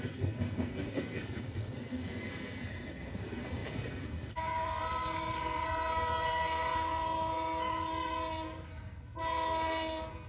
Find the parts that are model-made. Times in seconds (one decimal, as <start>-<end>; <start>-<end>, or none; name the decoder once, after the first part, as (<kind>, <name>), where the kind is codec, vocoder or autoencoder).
0.0-10.3 (codec, SNAC)